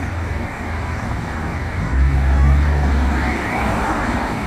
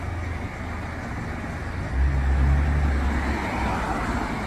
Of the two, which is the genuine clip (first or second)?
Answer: second